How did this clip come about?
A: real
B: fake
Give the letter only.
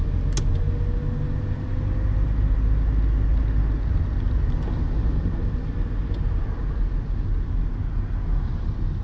A